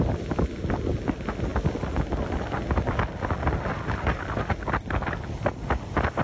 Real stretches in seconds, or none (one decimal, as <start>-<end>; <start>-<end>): 0.0-6.2